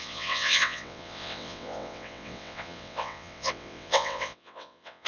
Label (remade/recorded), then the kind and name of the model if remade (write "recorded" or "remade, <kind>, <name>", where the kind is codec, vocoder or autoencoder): remade, vocoder, WaveNeXt